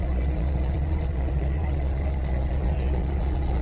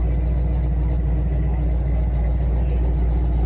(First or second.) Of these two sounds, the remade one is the first